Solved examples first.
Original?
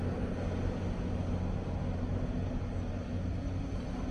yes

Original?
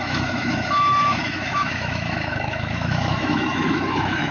no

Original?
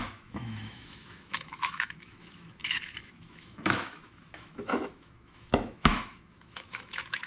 no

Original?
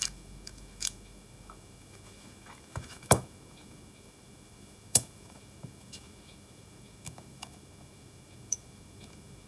no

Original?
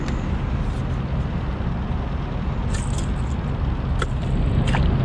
yes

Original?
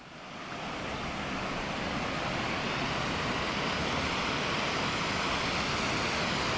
yes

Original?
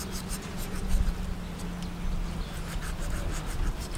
yes